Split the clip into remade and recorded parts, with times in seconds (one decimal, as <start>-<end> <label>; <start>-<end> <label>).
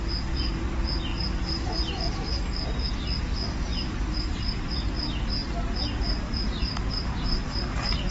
0.0-1.1 recorded; 1.1-2.0 remade; 2.0-3.7 recorded; 3.7-4.9 remade; 4.9-5.4 recorded; 5.4-8.1 remade